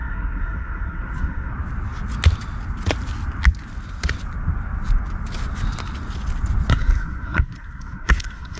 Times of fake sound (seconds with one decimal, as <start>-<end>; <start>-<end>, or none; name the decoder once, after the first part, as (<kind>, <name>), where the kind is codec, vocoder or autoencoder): 0.0-1.5 (codec, SNAC); 6.7-8.6